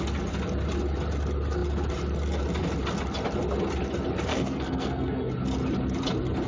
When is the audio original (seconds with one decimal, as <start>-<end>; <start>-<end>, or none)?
0.0-4.3; 5.3-6.5